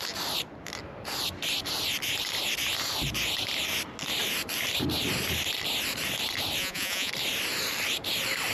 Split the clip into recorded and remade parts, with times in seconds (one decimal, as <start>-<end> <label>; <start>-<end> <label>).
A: 0.0-6.6 recorded; 6.6-7.1 remade; 7.1-8.5 recorded